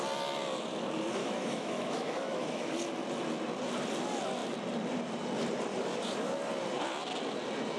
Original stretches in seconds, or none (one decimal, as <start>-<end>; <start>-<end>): 0.0-1.2; 2.7-7.8